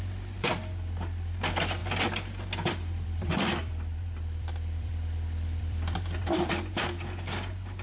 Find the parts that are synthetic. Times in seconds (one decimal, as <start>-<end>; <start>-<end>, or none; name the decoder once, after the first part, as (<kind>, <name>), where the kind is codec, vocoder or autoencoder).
1.8-6.5 (vocoder, BigVGAN v2)